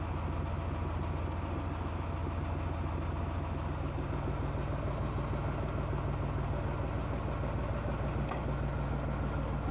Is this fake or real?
real